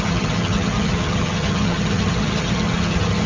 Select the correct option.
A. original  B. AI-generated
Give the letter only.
B